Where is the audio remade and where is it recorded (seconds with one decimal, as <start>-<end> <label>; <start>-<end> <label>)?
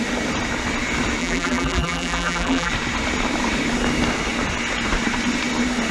0.0-1.2 recorded; 1.2-2.7 remade; 2.7-5.9 recorded